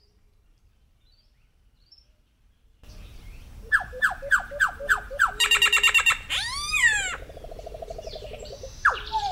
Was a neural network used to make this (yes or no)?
yes